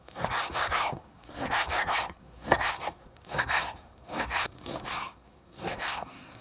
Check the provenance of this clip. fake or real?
fake